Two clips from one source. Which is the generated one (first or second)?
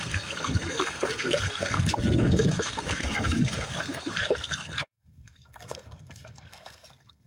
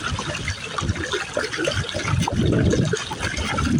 first